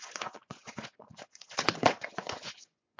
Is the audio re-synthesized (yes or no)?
yes